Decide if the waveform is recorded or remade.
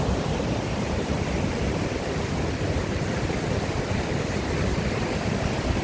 remade